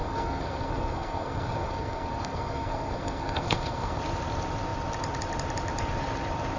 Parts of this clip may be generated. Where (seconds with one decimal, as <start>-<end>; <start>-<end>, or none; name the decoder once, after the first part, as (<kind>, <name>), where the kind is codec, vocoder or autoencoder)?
0.0-4.0 (codec, SNAC)